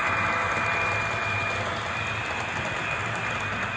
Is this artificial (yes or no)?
no